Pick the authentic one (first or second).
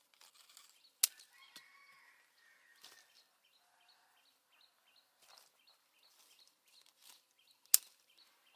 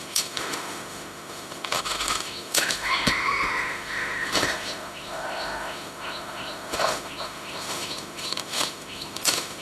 first